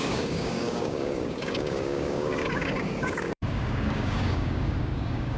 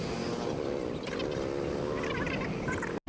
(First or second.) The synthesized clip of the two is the first